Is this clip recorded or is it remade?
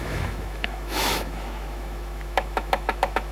remade